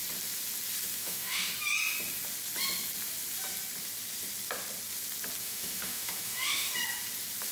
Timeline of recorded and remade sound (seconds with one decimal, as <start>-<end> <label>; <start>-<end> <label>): 0.0-1.0 recorded; 1.0-1.5 remade; 1.5-5.4 recorded; 5.4-6.7 remade; 6.7-7.5 recorded

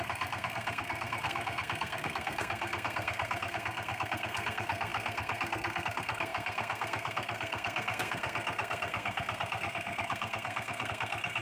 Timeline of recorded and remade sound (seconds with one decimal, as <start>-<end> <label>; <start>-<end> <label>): 0.0-11.4 remade

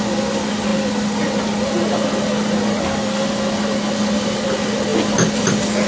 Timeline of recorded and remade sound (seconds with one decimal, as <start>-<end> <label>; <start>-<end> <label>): 0.0-5.9 recorded